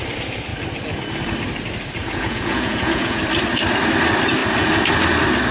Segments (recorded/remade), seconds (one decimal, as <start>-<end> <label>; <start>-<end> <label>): 0.0-2.0 recorded; 2.0-3.2 remade; 3.2-5.5 recorded